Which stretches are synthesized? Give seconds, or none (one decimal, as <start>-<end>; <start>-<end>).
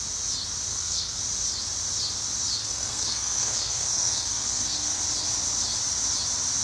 0.7-1.2; 2.6-5.0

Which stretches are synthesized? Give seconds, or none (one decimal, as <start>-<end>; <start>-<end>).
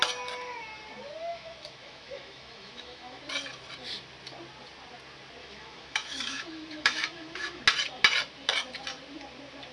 1.3-3.2; 5.4-7.6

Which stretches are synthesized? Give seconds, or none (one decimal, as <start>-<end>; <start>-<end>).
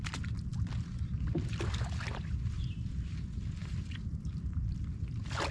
3.6-4.8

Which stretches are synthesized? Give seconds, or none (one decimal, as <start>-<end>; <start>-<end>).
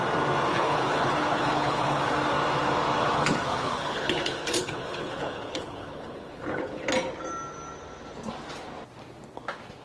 0.5-2.1; 3.0-6.9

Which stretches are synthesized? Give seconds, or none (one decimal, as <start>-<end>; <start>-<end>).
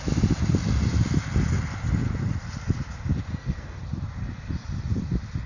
3.3-3.8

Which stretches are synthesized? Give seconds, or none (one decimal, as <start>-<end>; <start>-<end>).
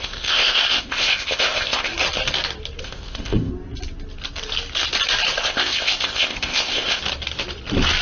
0.0-1.9; 2.8-3.5; 5.4-7.0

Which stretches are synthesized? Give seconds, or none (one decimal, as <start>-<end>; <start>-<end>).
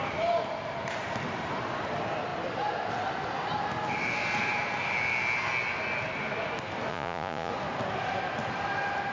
6.9-7.5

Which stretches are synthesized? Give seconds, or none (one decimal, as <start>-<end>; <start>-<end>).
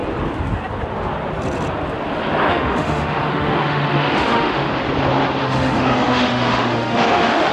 2.5-4.7; 5.4-7.5